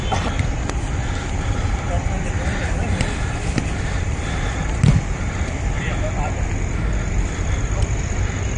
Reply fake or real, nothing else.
fake